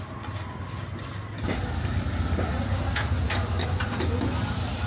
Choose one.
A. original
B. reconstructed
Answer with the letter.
A